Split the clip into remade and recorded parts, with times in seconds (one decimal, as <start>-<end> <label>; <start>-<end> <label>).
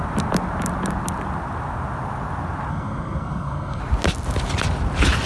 0.0-2.7 recorded; 2.7-3.8 remade; 3.8-5.3 recorded